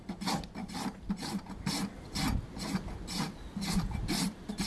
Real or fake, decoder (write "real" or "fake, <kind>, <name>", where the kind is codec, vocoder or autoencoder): real